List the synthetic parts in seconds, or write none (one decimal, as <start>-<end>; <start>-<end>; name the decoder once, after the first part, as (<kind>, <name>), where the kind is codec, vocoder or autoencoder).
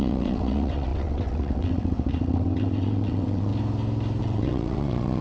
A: 0.0-3.5 (vocoder, WaveNeXt); 4.2-5.2